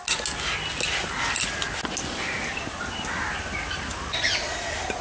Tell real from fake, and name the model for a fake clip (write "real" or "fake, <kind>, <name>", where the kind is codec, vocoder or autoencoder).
real